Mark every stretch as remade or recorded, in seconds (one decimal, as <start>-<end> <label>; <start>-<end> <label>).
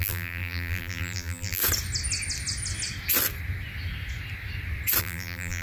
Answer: 0.0-1.6 remade; 1.6-5.0 recorded; 5.0-5.6 remade